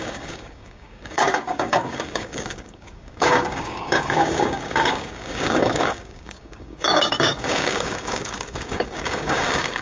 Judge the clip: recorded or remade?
remade